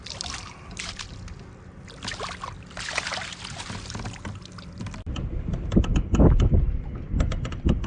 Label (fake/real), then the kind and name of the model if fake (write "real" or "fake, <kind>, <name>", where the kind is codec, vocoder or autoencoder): real